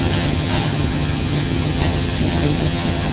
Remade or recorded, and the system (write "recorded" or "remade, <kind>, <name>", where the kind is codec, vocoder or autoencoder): remade, vocoder, HiFi-GAN